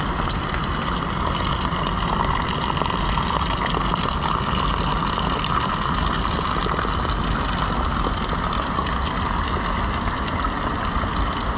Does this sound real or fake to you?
real